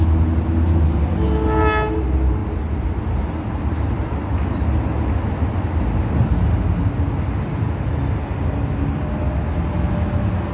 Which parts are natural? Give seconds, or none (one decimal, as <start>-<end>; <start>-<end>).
0.0-2.4; 4.5-10.5